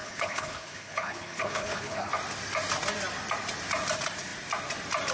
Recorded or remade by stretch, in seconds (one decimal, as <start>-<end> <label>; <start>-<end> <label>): 0.0-2.1 remade; 2.1-5.1 recorded